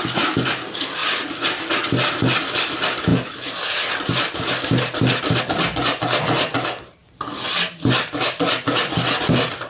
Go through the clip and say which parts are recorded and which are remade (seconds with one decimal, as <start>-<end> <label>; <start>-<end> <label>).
0.0-9.7 recorded